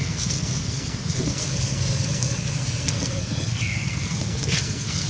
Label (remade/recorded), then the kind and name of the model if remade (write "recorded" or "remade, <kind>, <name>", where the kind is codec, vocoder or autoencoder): remade, codec, SNAC